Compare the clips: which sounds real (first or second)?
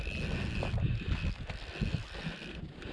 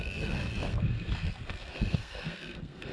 first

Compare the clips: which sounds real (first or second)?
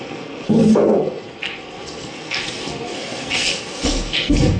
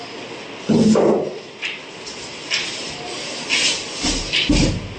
second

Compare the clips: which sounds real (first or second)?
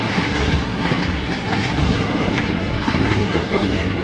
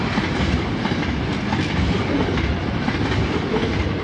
second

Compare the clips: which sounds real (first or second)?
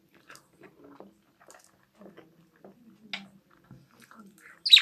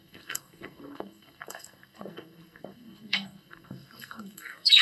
first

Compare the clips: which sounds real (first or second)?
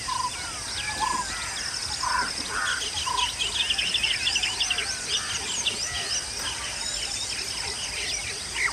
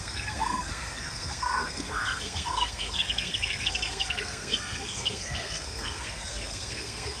first